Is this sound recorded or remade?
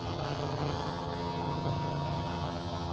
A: remade